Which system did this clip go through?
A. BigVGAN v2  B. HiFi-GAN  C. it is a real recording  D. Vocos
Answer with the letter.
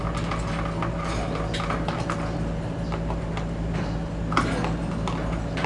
C